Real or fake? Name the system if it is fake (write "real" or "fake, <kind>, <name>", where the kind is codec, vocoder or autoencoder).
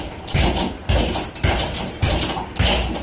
real